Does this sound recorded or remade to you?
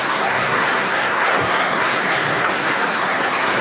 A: remade